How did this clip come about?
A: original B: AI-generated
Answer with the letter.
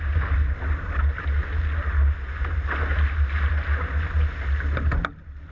A